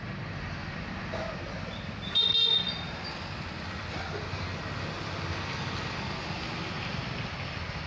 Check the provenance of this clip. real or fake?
real